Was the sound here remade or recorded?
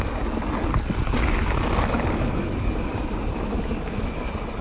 recorded